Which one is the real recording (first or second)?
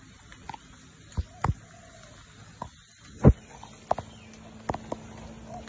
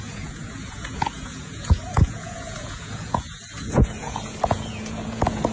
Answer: first